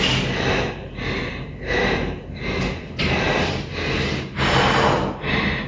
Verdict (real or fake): real